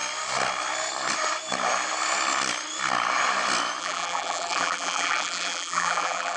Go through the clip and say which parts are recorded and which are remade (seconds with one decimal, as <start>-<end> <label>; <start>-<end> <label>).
0.0-3.8 recorded; 3.8-6.4 remade